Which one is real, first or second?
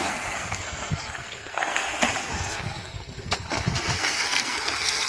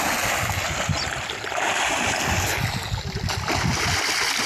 second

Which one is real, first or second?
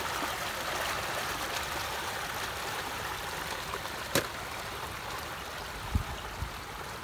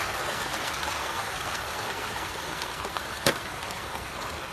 first